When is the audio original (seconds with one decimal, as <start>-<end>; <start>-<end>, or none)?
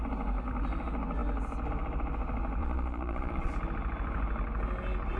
0.0-2.6; 3.5-5.2